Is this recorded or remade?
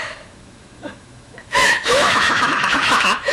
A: remade